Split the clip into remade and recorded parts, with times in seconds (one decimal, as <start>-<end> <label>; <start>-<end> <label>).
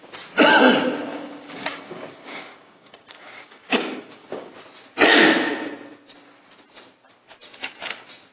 0.0-1.1 recorded; 1.1-4.5 remade; 4.5-8.3 recorded